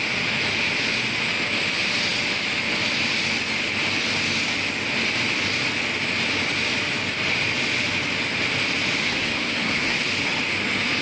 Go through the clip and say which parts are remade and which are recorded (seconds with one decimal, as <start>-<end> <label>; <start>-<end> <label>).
0.0-9.0 recorded; 9.0-10.0 remade; 10.0-11.0 recorded